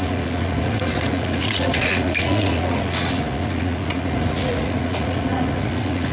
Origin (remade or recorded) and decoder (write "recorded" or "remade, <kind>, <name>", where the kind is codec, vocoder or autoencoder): remade, vocoder, Vocos